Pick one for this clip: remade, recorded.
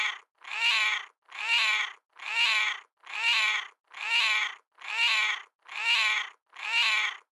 recorded